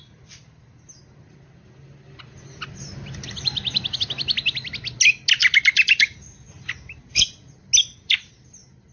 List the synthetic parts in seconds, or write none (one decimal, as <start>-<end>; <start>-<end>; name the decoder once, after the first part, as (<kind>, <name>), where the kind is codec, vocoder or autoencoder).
5.4-6.2 (vocoder, BigVGAN v2)